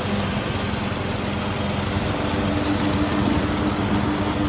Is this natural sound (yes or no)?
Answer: yes